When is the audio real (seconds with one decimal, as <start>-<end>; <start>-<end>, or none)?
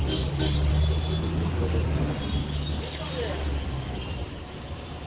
0.7-2.4; 3.0-5.1